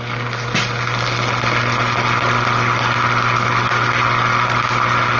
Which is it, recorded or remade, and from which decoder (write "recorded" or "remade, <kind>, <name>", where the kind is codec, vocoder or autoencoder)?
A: recorded